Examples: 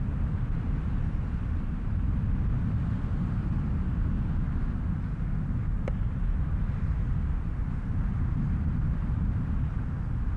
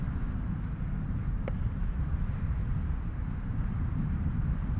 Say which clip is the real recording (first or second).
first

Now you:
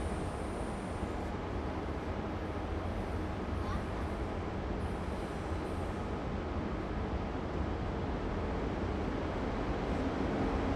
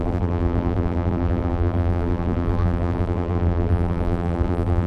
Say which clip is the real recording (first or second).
first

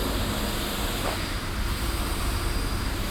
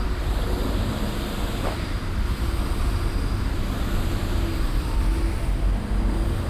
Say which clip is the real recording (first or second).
first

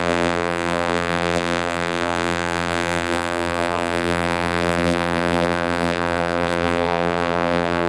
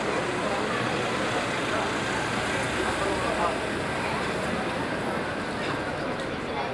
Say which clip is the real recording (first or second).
second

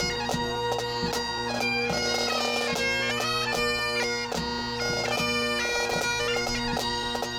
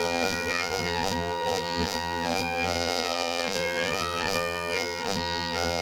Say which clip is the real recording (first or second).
first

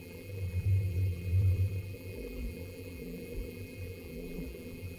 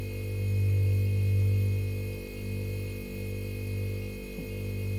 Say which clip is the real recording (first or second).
second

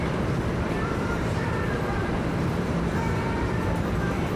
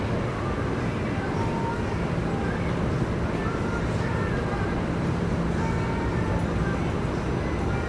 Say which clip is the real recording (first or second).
second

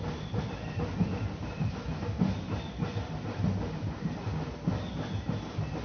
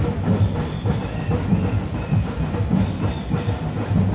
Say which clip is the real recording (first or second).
second